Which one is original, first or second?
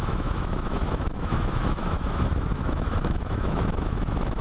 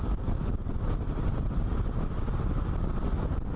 second